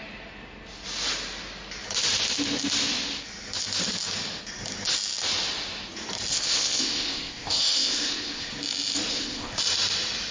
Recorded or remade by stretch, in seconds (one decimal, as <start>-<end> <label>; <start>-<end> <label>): 0.0-6.3 recorded; 6.3-8.5 remade; 8.5-9.1 recorded; 9.1-9.6 remade; 9.6-10.3 recorded